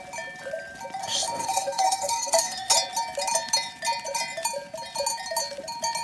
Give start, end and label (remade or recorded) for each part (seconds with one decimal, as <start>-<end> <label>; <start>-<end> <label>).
0.0-1.0 recorded; 1.0-2.7 remade; 2.7-6.0 recorded